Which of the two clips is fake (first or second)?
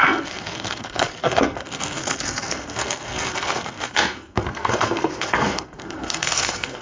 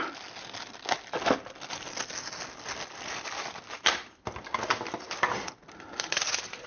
first